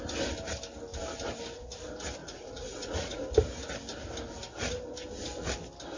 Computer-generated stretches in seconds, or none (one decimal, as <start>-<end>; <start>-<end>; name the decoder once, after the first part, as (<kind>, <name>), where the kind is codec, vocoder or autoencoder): 2.2-3.3 (vocoder, Vocos)